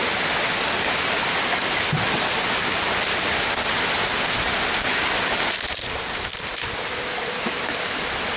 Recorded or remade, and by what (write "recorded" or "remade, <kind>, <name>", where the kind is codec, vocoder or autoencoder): recorded